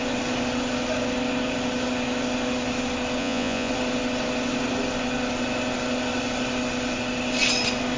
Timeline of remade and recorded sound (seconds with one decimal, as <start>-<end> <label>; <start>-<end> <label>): 0.0-3.2 recorded; 3.2-3.7 remade; 3.7-8.0 recorded